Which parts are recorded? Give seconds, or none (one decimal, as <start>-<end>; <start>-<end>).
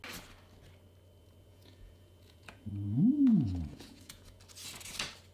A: 0.0-1.2; 4.4-5.3